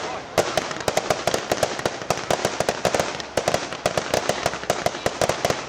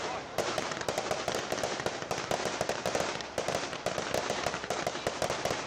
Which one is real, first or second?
first